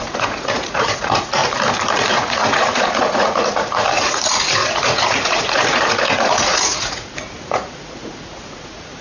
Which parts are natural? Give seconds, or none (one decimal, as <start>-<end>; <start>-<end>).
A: 1.4-2.1